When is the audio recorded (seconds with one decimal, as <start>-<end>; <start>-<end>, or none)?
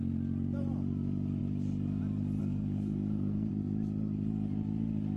0.0-2.4; 3.5-5.2